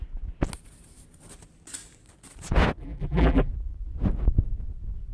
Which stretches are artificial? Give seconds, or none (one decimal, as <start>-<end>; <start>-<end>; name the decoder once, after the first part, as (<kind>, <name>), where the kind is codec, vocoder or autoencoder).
2.8-3.5 (vocoder, BigVGAN v2)